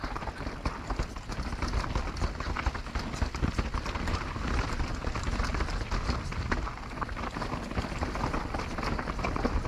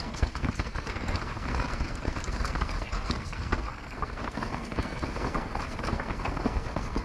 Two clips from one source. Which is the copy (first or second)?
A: second